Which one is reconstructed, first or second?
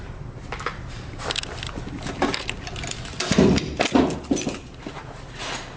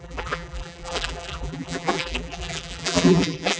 second